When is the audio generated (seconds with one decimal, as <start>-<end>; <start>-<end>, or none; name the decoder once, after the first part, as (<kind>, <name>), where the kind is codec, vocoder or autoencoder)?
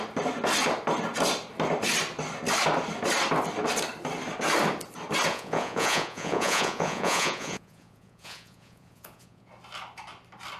5.3-9.5 (vocoder, Vocos)